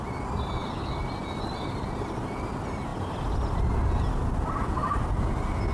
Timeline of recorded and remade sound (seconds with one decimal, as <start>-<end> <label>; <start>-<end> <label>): 0.0-5.7 recorded